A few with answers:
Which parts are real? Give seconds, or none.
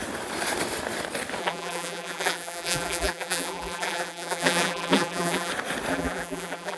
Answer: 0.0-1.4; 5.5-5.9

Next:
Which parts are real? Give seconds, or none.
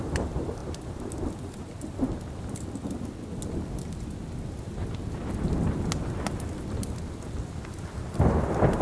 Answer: 0.0-8.8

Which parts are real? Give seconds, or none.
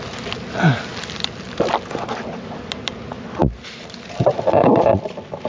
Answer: 0.0-5.5